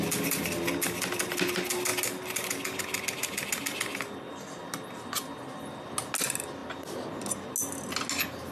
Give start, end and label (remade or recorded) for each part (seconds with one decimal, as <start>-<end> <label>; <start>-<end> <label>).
0.0-8.5 recorded